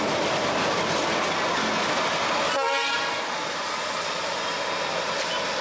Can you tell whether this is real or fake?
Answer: real